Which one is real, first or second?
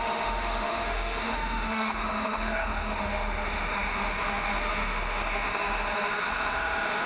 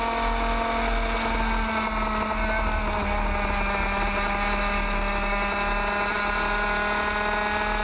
second